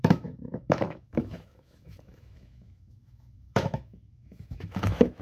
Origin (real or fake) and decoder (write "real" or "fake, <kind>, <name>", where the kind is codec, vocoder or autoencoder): fake, autoencoder, DAC-VAE